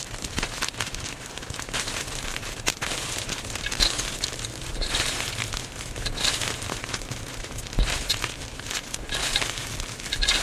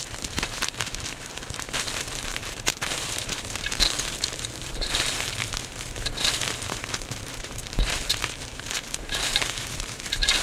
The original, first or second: first